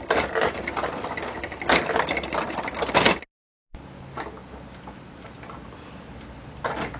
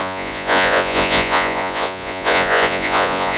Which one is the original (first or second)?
first